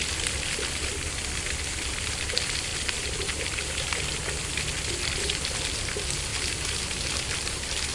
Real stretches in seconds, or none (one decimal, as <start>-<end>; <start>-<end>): 0.0-2.7; 4.2-7.9